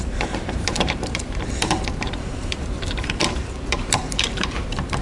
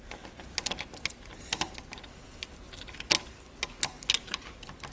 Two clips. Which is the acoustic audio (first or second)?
second